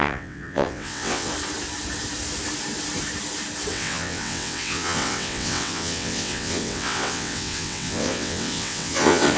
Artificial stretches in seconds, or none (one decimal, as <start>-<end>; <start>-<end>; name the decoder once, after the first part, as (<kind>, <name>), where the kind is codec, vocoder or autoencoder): 0.0-1.3 (vocoder, WaveNeXt); 3.7-9.4